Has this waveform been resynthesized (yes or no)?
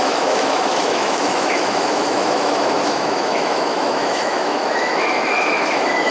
yes